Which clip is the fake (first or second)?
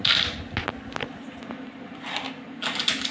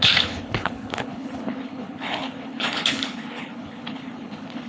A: second